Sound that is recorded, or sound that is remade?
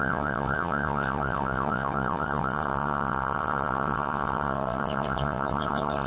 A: remade